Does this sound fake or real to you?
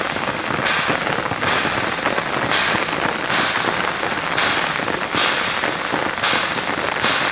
real